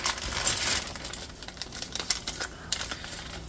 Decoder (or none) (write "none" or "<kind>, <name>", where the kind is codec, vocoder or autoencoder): vocoder, BigVGAN v2